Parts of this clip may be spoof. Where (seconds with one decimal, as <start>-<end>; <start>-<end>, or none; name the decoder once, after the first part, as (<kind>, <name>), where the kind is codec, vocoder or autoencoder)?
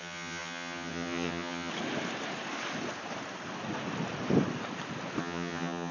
0.0-1.7 (vocoder, HiFi-GAN); 5.2-5.9